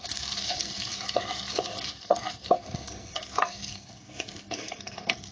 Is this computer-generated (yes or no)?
yes